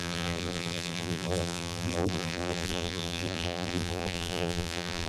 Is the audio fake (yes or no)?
yes